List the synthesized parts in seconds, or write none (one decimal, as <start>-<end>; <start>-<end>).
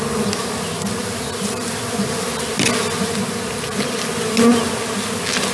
none